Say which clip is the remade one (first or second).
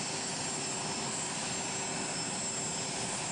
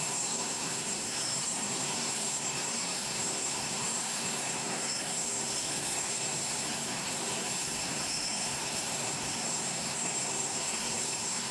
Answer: second